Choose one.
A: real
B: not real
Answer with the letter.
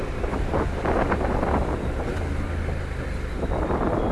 A